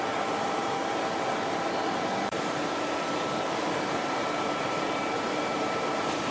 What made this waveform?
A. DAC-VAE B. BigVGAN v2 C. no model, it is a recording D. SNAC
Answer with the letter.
B